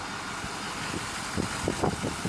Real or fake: real